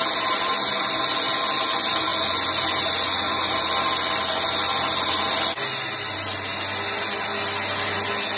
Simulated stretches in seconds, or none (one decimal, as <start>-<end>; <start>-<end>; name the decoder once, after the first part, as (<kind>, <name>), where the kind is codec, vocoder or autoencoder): none